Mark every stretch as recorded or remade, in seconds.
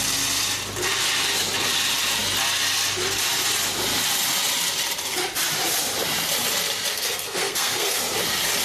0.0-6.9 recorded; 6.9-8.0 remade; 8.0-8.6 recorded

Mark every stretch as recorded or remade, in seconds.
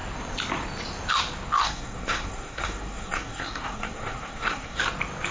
0.0-1.6 recorded; 1.6-4.8 remade; 4.8-5.3 recorded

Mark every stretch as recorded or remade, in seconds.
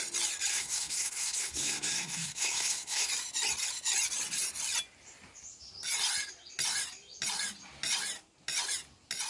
0.0-0.5 recorded; 0.5-3.1 remade; 3.1-9.3 recorded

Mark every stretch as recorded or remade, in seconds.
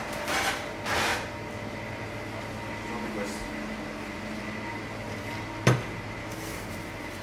0.0-6.2 recorded; 6.2-6.7 remade; 6.7-7.2 recorded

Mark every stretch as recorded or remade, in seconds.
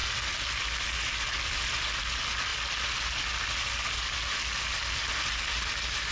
0.0-6.1 recorded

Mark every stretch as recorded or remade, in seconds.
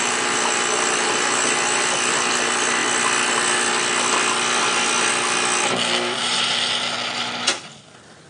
0.0-8.3 recorded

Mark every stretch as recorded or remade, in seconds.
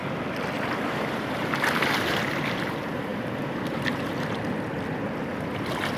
0.0-6.0 recorded